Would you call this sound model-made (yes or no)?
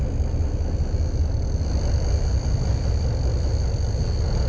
no